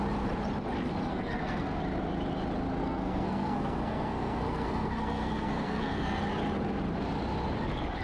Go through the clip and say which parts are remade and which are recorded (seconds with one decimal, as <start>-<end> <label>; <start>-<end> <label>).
0.0-1.1 recorded; 1.1-1.8 remade; 1.8-2.8 recorded; 2.8-6.2 remade; 6.2-8.0 recorded